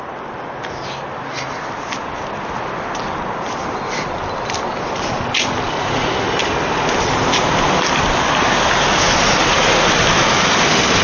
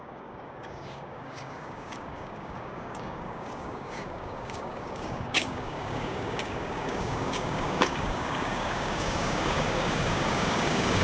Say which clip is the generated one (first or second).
second